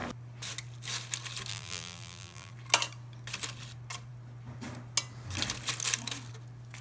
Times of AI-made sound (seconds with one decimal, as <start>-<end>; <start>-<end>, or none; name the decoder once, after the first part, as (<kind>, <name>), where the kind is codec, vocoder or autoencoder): 1.5-2.5 (vocoder, BigVGAN v2)

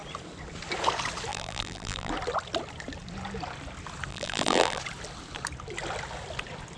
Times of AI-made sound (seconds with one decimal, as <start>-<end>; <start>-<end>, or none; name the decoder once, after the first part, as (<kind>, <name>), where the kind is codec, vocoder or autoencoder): 1.3-2.1 (vocoder, BigVGAN v2); 4.1-4.8

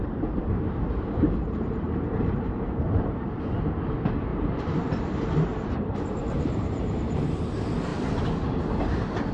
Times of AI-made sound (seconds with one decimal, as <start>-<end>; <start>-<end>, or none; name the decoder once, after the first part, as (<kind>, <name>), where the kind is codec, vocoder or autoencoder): 0.0-3.5 (vocoder, BigVGAN v2); 4.3-4.9; 5.5-7.3

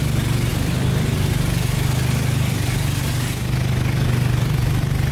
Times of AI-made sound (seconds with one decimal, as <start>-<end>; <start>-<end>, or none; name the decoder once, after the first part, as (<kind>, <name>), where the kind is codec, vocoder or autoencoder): none